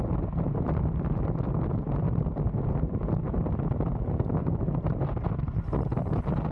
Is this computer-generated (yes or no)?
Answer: no